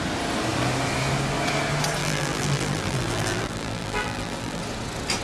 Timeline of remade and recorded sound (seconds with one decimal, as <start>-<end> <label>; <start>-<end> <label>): 0.0-2.0 recorded; 2.0-4.6 remade; 4.6-5.2 recorded